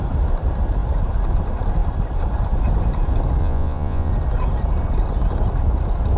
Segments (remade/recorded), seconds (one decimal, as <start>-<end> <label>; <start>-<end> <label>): 0.0-3.4 recorded; 3.4-4.1 remade; 4.1-6.2 recorded